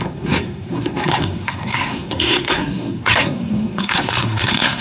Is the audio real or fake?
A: fake